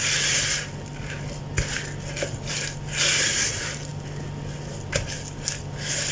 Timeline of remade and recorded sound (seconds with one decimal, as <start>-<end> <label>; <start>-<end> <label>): 0.0-6.1 recorded